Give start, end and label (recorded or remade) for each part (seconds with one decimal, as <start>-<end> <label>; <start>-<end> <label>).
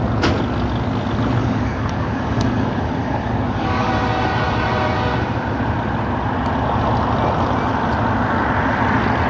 0.0-1.4 recorded; 1.4-3.9 remade; 3.9-9.3 recorded